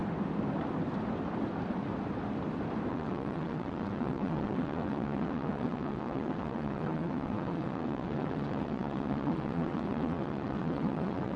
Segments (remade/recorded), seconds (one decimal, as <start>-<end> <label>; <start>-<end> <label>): 0.0-2.9 recorded; 2.9-11.4 remade